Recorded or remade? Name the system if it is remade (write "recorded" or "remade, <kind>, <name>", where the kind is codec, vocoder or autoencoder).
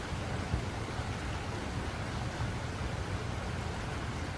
recorded